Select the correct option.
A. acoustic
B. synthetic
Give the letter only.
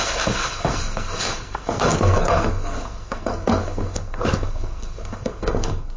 B